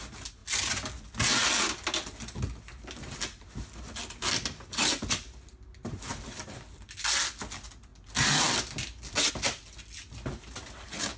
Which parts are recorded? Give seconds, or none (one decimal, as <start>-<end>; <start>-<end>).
0.0-11.2